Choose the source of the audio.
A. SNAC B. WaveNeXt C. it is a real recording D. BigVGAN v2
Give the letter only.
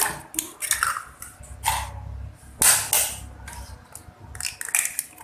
C